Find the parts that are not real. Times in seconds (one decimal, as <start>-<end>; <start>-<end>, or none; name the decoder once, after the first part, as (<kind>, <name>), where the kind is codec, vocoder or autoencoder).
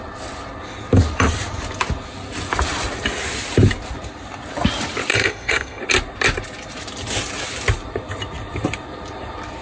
5.1-5.8 (codec, SNAC)